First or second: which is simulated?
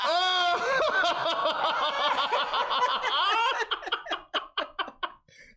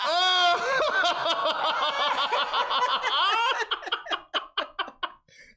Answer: first